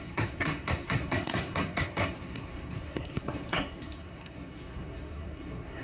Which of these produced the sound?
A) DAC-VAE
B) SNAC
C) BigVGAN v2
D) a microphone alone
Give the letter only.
B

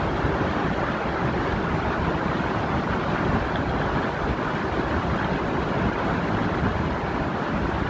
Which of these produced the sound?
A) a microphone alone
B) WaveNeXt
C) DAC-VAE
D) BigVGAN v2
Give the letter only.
A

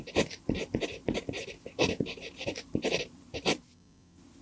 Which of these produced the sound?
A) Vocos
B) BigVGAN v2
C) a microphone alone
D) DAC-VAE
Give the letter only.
C